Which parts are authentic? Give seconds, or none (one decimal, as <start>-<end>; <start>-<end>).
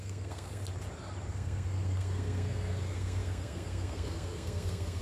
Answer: 0.6-1.3